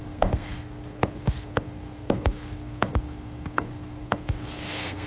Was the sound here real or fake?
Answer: fake